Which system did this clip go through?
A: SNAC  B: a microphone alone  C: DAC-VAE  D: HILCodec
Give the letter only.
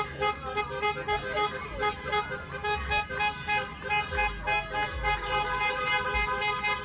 B